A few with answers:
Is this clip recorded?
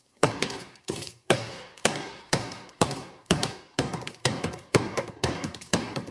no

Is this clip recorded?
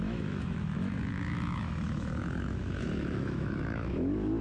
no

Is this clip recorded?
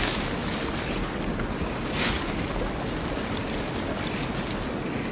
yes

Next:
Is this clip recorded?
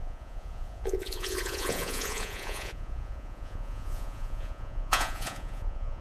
no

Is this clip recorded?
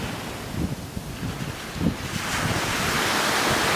yes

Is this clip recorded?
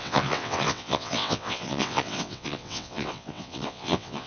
no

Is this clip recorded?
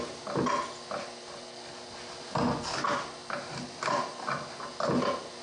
yes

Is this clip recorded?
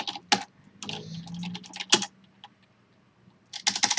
yes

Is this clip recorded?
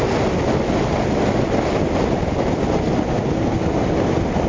yes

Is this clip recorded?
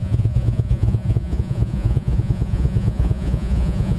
no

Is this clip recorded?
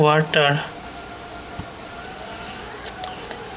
no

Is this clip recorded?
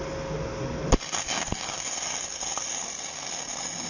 yes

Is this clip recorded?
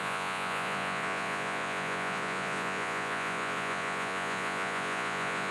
no